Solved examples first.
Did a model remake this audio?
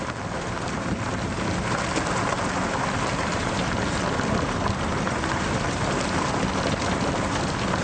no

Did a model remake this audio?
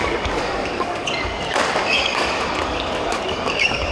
yes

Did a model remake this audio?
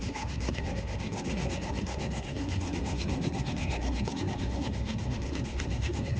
yes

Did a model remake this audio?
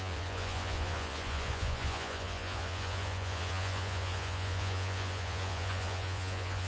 yes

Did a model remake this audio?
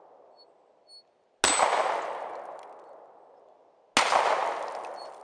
no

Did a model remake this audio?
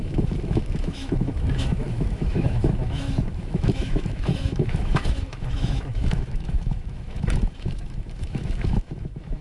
yes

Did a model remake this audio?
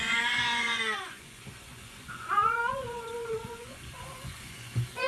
yes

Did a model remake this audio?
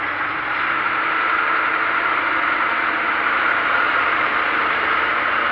no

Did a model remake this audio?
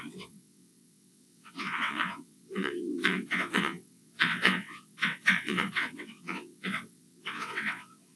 yes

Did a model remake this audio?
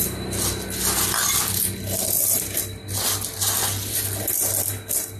no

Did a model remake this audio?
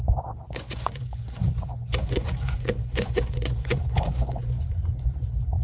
yes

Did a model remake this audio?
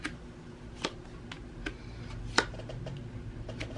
no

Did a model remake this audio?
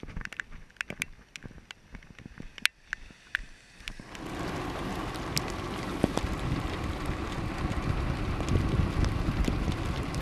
no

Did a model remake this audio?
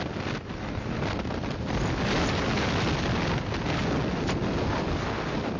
no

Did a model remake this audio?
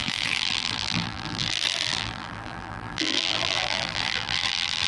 yes